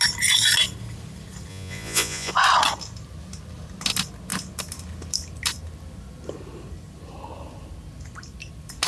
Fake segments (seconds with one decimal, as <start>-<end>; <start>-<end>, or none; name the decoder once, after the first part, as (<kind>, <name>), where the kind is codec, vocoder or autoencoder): 1.5-2.3 (vocoder, Vocos)